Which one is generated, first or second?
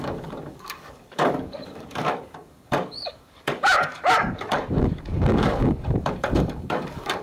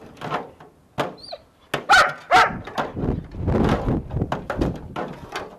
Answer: first